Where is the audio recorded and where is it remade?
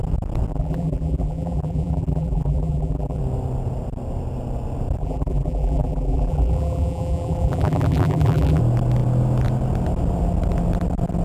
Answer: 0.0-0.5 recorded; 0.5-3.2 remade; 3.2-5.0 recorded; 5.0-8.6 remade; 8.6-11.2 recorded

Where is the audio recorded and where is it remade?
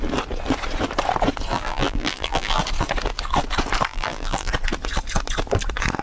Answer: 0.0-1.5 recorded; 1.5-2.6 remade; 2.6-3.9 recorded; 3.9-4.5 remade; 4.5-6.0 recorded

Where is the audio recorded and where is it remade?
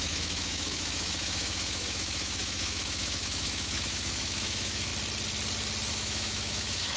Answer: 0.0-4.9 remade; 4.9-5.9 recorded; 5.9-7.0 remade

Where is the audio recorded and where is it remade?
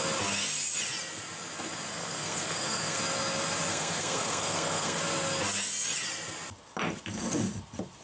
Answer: 0.0-1.9 recorded; 1.9-3.0 remade; 3.0-3.7 recorded; 3.7-5.0 remade; 5.0-8.0 recorded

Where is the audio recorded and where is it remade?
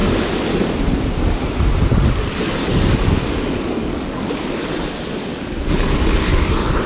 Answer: 0.0-2.6 recorded; 2.6-4.3 remade; 4.3-5.1 recorded; 5.1-6.2 remade; 6.2-6.9 recorded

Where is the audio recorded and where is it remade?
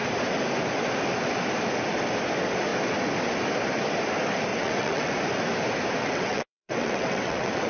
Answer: 0.0-4.5 recorded; 4.5-5.1 remade; 5.1-6.0 recorded; 6.0-7.7 remade